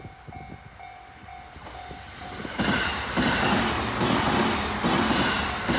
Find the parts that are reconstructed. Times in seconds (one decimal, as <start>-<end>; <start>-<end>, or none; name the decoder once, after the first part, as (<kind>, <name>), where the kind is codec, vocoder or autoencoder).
none